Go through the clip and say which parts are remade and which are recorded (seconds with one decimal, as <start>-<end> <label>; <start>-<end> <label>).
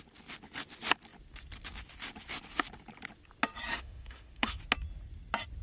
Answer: 0.0-3.7 recorded; 3.7-4.6 remade; 4.6-5.6 recorded